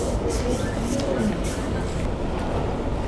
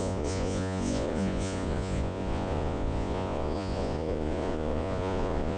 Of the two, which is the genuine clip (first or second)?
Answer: first